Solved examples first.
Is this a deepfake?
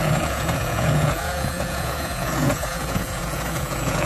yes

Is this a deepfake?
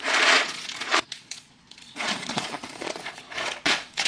yes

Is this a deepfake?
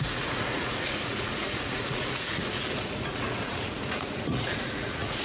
yes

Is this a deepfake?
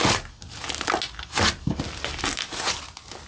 no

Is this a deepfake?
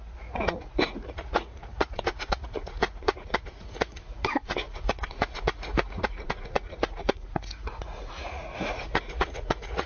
yes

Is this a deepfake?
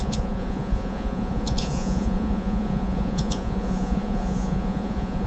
yes